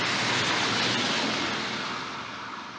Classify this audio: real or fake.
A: real